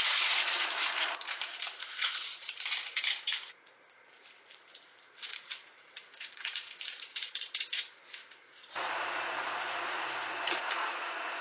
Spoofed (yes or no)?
yes